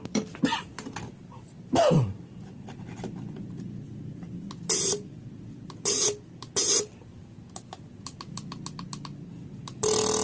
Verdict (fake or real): real